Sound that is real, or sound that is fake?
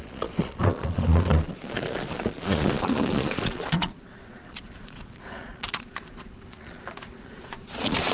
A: fake